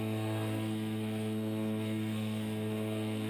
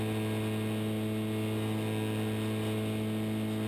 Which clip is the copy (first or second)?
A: first